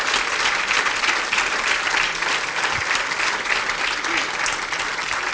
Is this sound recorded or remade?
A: remade